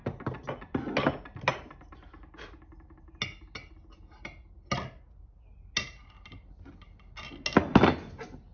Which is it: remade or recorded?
recorded